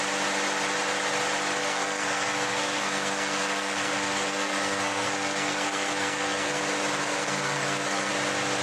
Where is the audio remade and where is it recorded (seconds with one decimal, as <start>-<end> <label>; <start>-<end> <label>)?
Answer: 0.0-1.6 recorded; 1.6-6.6 remade; 6.6-7.0 recorded; 7.0-8.1 remade; 8.1-8.6 recorded